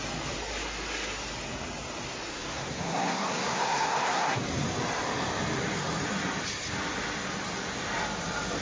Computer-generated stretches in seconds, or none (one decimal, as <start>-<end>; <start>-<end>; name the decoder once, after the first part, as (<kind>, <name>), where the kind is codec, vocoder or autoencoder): 2.3-4.4 (codec, SNAC)